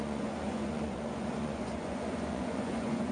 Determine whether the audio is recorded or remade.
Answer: remade